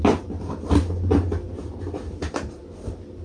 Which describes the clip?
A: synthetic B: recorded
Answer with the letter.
B